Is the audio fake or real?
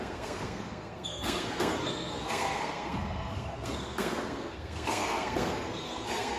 fake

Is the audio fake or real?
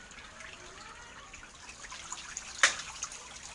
real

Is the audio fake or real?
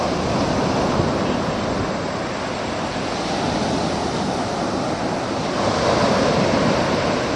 real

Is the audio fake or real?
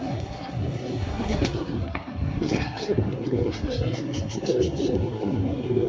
fake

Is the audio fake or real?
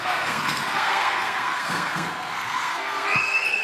fake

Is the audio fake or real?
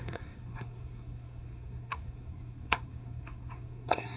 fake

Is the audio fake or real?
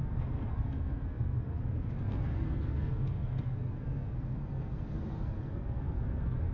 fake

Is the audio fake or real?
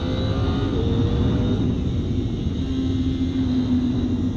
real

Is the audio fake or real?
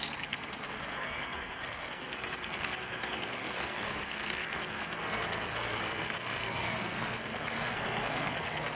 fake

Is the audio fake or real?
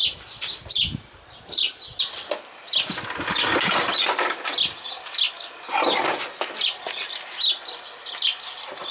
real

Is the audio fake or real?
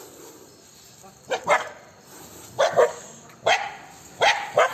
real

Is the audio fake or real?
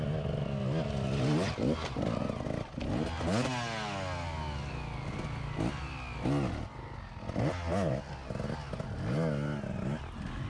real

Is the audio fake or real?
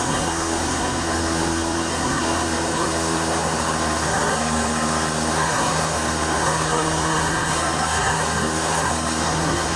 fake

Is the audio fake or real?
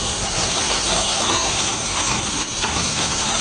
fake